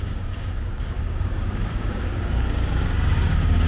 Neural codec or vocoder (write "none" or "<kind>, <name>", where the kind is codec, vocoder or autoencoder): codec, DAC